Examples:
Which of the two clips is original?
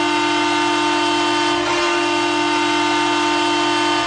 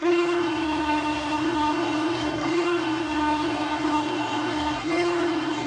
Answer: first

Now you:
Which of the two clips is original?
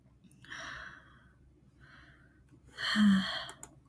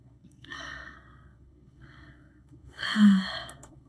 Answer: first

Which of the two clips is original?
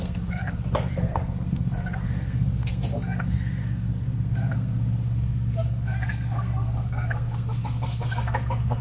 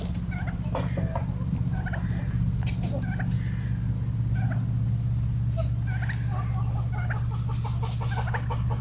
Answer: second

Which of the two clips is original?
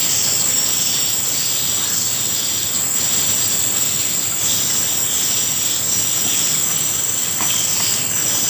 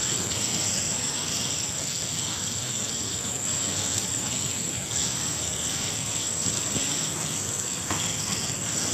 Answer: first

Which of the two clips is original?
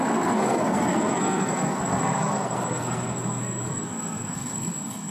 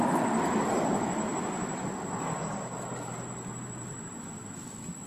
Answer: second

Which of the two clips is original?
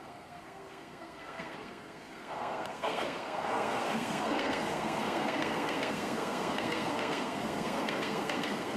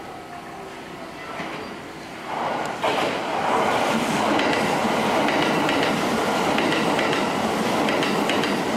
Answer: second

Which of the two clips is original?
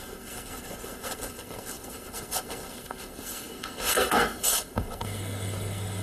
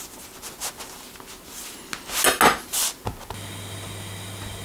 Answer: second